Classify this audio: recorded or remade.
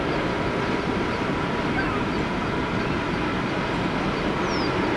recorded